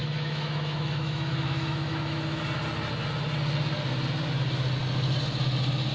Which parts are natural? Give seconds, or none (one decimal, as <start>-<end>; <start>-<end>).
2.4-5.9